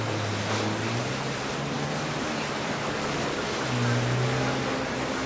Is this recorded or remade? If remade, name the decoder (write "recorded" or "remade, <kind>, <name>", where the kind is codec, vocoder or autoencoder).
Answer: recorded